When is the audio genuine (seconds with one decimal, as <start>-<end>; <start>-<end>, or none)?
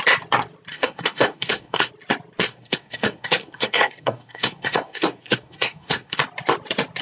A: 0.0-0.7; 1.9-2.4; 6.2-7.0